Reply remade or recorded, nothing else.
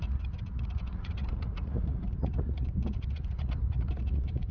remade